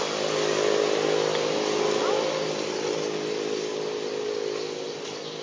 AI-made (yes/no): no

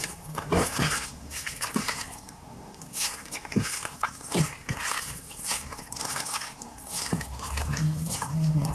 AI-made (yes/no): yes